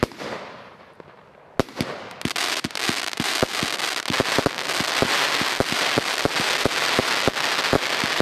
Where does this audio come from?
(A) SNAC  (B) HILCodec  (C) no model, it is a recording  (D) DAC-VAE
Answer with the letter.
C